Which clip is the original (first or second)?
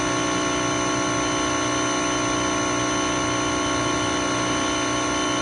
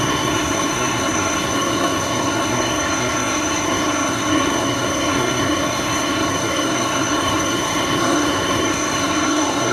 first